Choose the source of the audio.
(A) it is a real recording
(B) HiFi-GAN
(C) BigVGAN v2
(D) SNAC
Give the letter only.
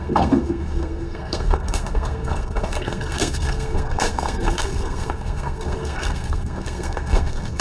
D